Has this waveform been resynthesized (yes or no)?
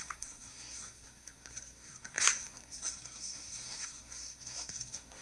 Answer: yes